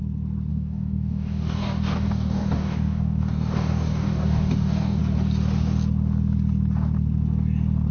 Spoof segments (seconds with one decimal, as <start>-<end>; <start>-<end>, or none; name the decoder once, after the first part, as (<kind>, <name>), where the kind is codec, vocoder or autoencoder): 0.5-5.0 (codec, DAC)